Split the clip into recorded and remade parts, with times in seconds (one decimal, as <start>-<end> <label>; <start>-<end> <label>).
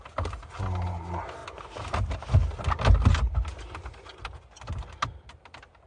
0.0-5.9 recorded